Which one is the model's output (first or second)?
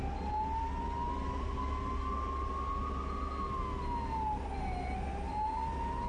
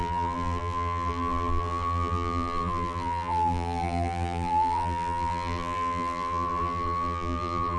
second